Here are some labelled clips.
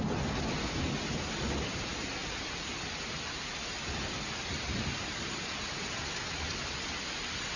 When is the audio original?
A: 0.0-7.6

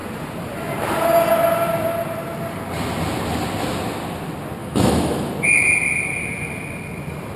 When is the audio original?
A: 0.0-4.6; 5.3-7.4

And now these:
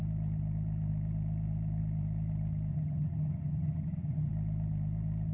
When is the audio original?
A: 0.0-2.7; 4.3-5.3

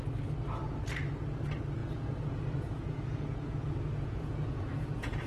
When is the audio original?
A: 0.0-1.8

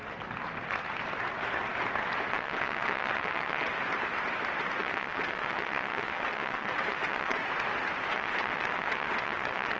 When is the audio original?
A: 0.0-2.3; 3.7-4.8; 7.4-8.1